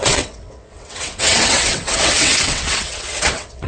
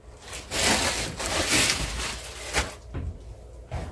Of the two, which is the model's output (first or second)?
first